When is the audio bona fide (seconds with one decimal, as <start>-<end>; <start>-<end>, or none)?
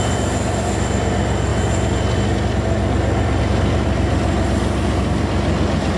0.0-6.0